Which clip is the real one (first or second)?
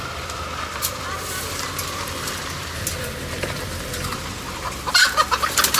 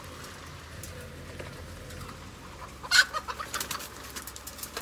second